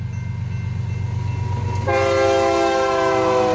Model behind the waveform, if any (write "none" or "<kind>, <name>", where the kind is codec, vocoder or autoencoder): none